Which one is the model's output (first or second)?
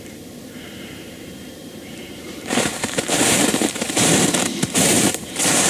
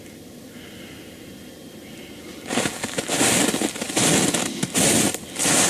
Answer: first